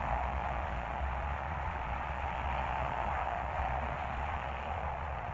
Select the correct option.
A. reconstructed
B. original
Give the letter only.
A